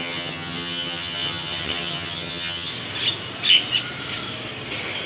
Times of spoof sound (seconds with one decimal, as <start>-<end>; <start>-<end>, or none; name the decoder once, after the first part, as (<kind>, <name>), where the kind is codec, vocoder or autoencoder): 0.0-2.7 (vocoder, HiFi-GAN)